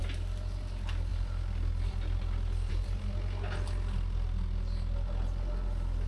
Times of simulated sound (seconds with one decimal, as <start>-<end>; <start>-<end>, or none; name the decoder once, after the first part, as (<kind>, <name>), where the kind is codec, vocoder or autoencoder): none